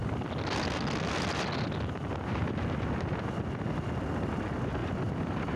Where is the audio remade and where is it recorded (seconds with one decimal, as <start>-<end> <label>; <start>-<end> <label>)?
0.0-4.8 recorded; 4.8-5.6 remade